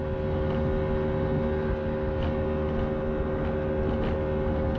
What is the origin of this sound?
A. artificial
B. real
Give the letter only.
B